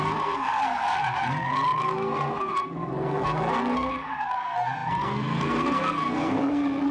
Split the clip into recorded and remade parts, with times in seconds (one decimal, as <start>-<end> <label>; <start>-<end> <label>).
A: 0.0-6.9 remade